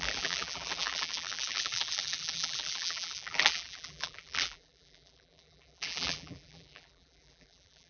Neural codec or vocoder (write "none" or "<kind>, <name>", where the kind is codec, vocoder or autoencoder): vocoder, BigVGAN v2